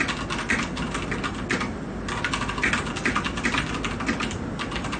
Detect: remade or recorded recorded